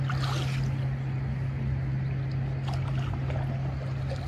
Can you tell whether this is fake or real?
real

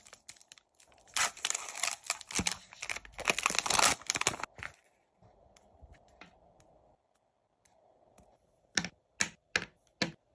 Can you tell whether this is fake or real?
real